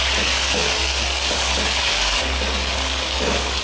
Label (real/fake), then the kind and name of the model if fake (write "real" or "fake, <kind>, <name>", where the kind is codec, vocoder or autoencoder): fake, codec, DAC